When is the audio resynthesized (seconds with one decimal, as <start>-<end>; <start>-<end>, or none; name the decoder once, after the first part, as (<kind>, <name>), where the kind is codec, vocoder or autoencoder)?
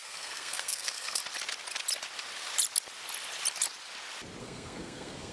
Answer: 0.0-1.2 (codec, SNAC); 4.4-5.3